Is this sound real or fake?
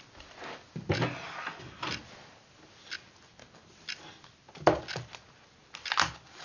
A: real